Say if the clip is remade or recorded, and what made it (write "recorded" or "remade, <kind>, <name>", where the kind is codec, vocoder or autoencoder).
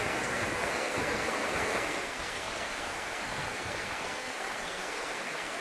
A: remade, codec, SNAC